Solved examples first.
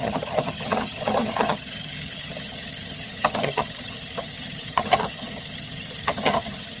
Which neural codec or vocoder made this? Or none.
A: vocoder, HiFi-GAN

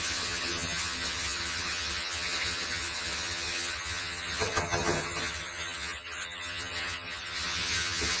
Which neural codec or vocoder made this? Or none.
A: vocoder, HiFi-GAN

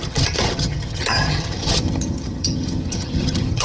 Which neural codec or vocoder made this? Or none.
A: vocoder, HiFi-GAN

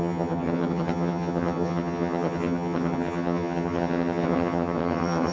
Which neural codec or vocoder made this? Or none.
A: vocoder, HiFi-GAN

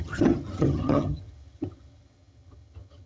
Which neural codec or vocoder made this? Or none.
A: vocoder, HiFi-GAN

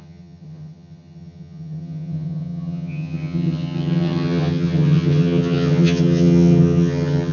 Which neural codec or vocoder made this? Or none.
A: vocoder, HiFi-GAN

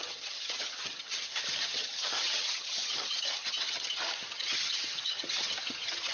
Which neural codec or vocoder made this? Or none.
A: vocoder, HiFi-GAN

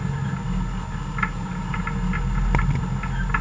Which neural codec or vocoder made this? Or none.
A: none